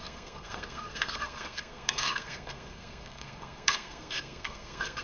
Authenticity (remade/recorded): remade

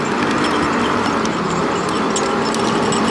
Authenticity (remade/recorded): recorded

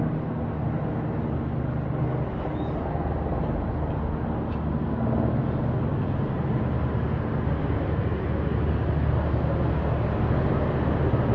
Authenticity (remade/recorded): recorded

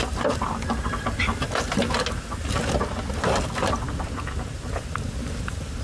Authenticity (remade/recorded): recorded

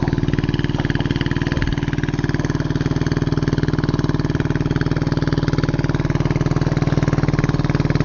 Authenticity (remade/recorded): recorded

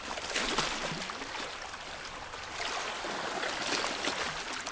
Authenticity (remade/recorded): recorded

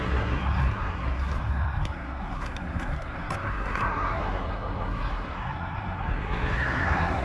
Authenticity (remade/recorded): remade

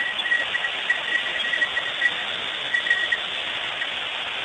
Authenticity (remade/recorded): recorded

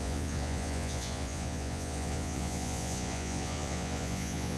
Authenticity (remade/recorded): remade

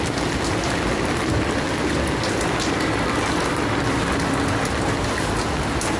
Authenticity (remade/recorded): recorded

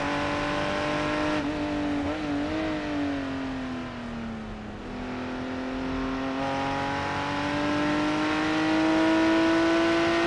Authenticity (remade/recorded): recorded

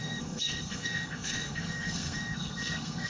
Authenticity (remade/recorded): remade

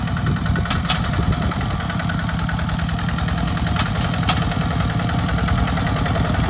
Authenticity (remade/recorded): recorded